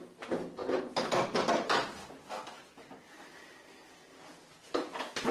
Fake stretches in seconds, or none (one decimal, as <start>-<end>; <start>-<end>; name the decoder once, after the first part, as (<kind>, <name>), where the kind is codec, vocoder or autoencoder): 4.1-5.3 (vocoder, Vocos)